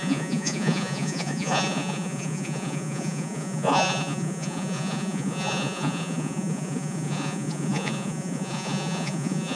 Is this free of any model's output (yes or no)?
no